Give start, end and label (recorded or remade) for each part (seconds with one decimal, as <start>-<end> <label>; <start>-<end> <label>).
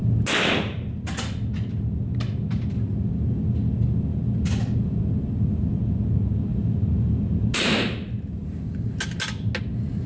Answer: 0.0-6.5 recorded; 6.5-7.7 remade; 7.7-10.1 recorded